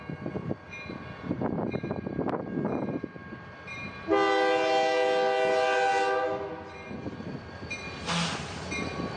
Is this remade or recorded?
recorded